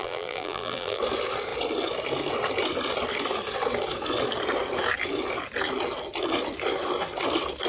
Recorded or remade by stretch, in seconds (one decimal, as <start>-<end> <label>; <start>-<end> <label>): 0.0-1.0 remade; 1.0-7.7 recorded